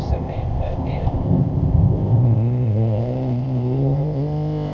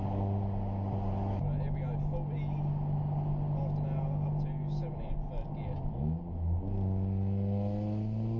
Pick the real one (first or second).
second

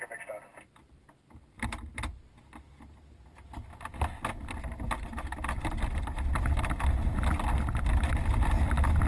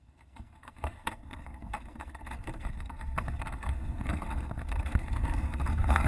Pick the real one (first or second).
first